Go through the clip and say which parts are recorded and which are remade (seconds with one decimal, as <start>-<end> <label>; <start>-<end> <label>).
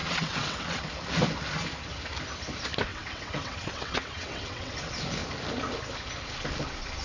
0.0-0.8 remade; 0.8-2.9 recorded; 2.9-4.7 remade; 4.7-7.0 recorded